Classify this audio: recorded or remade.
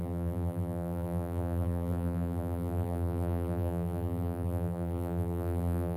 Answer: remade